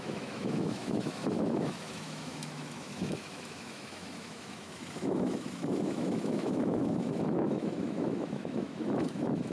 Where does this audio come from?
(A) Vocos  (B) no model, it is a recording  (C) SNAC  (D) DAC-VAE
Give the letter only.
D